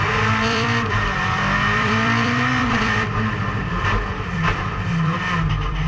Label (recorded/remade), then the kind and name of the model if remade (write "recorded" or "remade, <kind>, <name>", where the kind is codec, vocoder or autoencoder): remade, vocoder, BigVGAN v2